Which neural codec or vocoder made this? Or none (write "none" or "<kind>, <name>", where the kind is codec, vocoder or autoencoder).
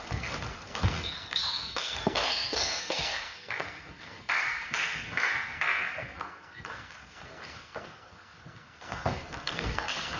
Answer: codec, SNAC